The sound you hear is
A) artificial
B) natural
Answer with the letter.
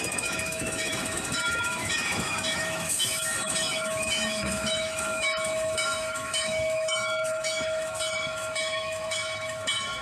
A